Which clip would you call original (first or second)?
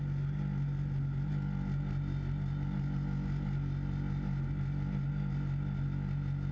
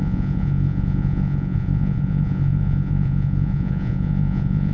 first